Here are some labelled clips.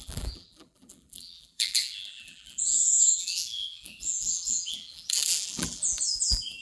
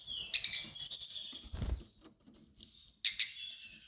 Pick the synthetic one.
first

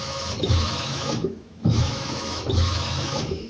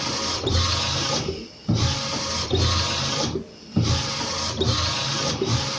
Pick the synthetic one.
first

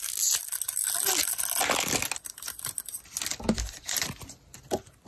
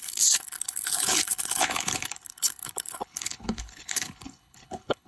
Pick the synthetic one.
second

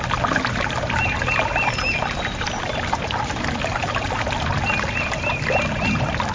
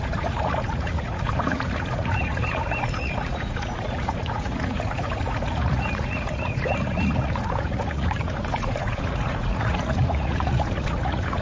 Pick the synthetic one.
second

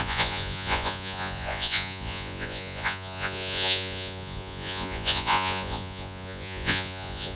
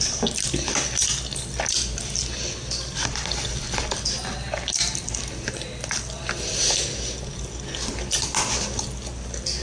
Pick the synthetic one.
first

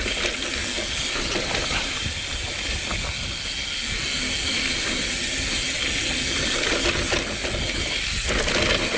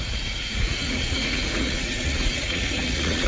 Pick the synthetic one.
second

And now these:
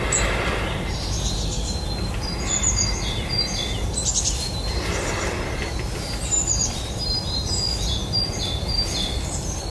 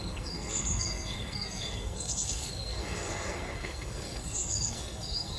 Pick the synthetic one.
second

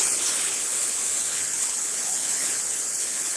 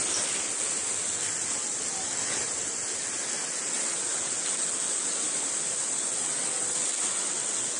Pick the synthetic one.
first